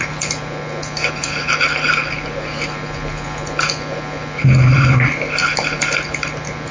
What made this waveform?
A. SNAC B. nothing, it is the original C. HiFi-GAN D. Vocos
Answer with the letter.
B